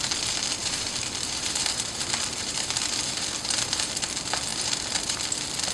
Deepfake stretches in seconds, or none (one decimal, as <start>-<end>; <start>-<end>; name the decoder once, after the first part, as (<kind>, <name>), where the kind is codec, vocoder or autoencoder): 0.6-3.9 (vocoder, BigVGAN v2); 4.5-5.2